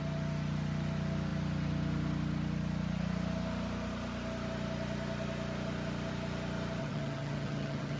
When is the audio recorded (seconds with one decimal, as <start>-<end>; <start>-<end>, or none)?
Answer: 0.0-6.8

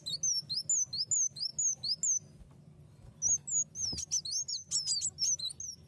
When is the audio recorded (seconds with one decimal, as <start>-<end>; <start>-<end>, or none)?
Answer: 0.0-5.9

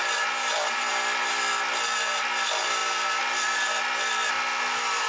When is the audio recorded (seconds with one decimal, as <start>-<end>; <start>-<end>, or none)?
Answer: 0.0-5.1

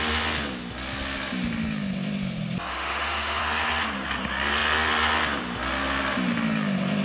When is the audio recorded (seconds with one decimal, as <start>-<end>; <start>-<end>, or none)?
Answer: 0.0-2.7; 3.4-7.0